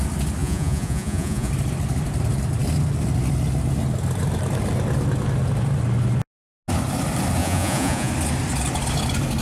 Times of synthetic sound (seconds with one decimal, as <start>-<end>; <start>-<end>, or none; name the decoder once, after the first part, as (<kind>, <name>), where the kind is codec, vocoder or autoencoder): 0.4-1.5 (vocoder, Vocos); 7.4-8.1